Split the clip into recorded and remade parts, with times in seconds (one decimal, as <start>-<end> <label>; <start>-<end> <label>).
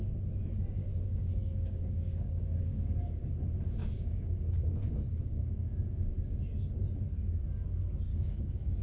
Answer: 0.0-0.8 recorded; 0.8-3.2 remade; 3.2-3.8 recorded; 3.8-6.1 remade; 6.1-8.1 recorded; 8.1-8.8 remade